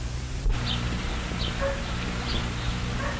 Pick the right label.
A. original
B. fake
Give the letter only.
A